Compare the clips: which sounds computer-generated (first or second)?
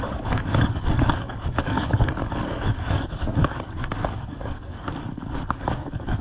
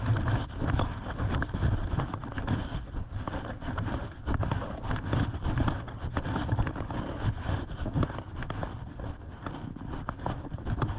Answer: first